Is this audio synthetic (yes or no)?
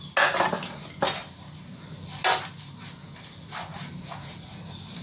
no